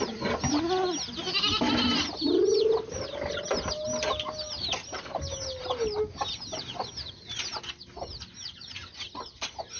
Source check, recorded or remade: recorded